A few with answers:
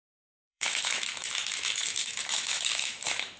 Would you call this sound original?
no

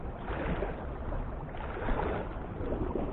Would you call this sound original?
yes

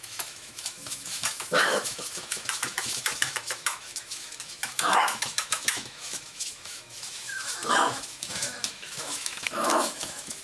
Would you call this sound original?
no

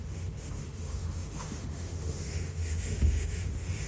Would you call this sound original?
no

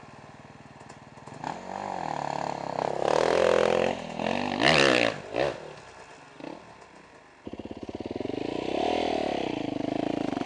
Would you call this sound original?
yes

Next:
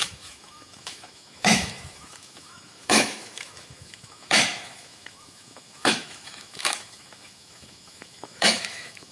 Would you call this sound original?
no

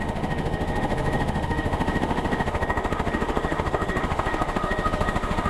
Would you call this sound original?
no